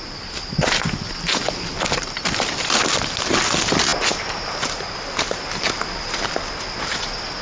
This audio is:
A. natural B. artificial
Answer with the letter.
A